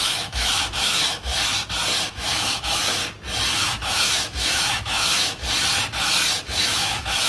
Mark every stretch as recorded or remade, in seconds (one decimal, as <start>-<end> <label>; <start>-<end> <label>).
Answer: 0.0-1.3 remade; 1.3-2.1 recorded; 2.1-3.0 remade; 3.0-3.5 recorded; 3.5-5.4 remade; 5.4-6.4 recorded; 6.4-7.3 remade